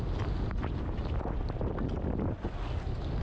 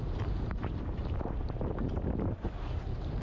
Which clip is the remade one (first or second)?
second